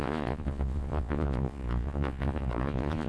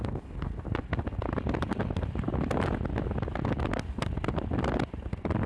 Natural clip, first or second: second